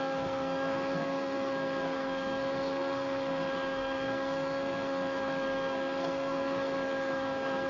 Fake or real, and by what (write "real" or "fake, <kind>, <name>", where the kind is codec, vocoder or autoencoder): fake, codec, SNAC